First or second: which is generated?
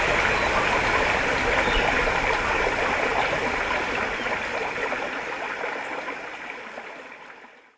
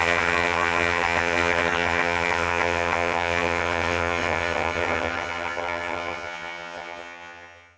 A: second